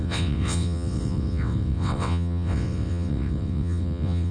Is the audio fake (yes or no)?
yes